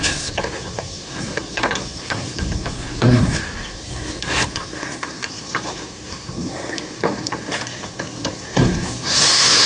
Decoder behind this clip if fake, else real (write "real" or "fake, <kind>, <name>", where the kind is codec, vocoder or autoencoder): fake, codec, SNAC